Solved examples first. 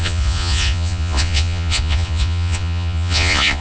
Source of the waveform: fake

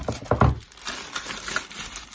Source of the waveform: real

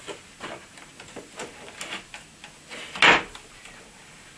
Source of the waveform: real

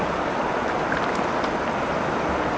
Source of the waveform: real